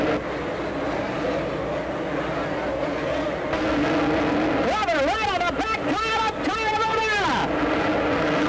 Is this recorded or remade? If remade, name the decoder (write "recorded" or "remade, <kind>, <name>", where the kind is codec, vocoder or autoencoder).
recorded